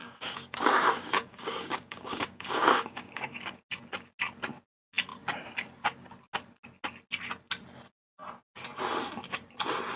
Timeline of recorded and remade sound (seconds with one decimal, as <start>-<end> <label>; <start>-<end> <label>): 0.0-3.5 remade; 3.5-10.0 recorded